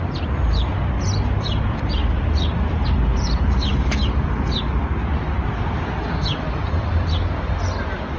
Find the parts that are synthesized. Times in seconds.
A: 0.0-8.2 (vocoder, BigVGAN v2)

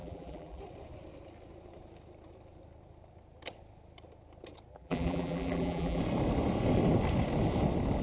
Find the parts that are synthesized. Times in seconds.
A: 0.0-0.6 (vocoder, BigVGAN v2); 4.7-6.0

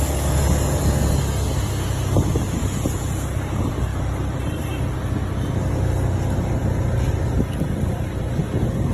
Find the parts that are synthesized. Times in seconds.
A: 3.9-4.7 (vocoder, BigVGAN v2)

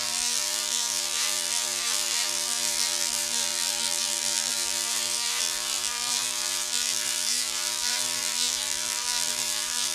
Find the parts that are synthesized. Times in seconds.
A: 0.0-9.9 (vocoder, BigVGAN v2)

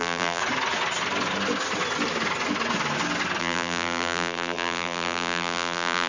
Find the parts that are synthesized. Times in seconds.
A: 0.0-0.4 (vocoder, BigVGAN v2); 3.4-6.1

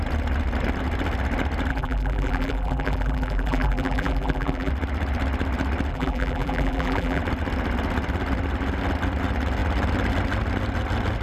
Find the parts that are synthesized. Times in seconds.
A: 1.7-4.7 (vocoder, BigVGAN v2); 5.9-7.2